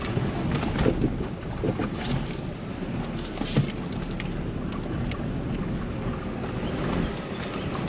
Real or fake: real